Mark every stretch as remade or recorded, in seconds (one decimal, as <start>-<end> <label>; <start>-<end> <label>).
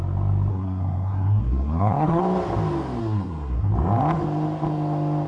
0.0-0.5 recorded; 0.5-2.2 remade; 2.2-3.0 recorded; 3.0-3.7 remade; 3.7-5.3 recorded